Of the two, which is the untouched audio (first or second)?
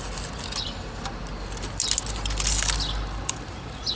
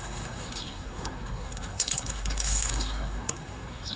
first